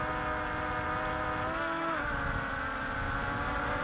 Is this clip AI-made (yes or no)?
no